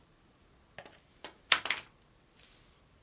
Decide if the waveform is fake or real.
real